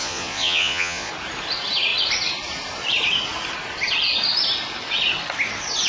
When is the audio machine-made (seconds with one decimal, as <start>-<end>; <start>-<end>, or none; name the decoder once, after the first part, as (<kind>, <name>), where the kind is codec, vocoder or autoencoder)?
0.0-1.1 (vocoder, Vocos)